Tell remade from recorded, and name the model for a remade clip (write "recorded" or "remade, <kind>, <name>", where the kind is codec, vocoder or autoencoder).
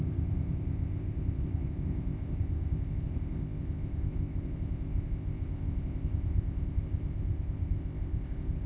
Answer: remade, codec, ZipCodec